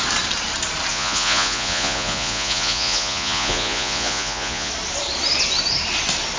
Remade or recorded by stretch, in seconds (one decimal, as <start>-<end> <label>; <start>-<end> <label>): 0.0-0.9 recorded; 0.9-4.7 remade; 4.7-6.4 recorded